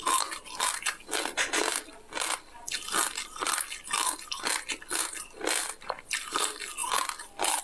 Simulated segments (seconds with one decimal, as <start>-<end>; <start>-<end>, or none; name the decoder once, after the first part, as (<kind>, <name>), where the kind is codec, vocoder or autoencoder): none